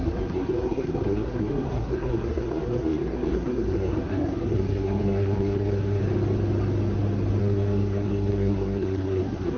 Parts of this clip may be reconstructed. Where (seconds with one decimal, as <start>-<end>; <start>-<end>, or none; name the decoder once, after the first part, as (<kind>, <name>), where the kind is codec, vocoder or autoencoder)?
0.0-6.0 (codec, SNAC); 7.4-9.6